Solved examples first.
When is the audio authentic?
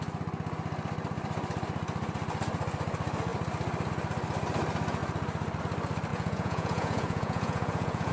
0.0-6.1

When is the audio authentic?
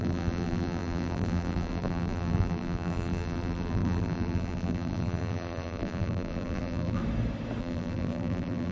7.0-7.6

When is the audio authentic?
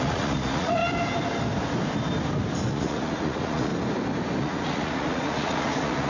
0.8-2.7; 3.7-4.4